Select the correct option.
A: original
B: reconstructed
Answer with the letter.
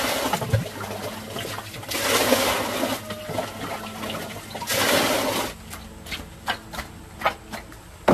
A